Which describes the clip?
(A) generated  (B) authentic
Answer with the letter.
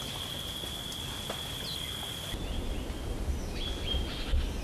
B